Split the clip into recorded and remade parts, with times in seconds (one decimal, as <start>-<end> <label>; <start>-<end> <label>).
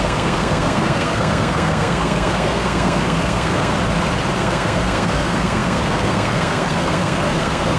0.0-3.7 remade; 3.7-4.4 recorded; 4.4-7.8 remade